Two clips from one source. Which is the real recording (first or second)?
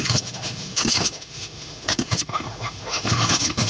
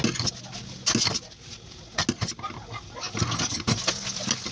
second